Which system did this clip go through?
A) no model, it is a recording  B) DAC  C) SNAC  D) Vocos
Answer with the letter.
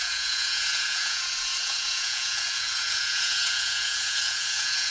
D